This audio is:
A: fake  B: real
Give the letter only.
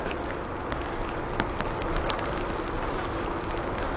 B